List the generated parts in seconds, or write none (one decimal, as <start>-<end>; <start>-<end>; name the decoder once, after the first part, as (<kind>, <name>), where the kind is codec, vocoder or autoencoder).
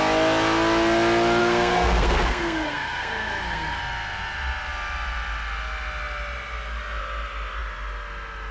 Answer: 1.4-3.8 (codec, SNAC)